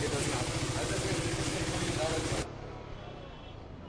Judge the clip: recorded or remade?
recorded